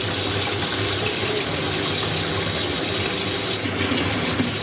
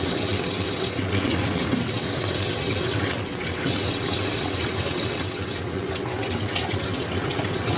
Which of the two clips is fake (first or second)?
second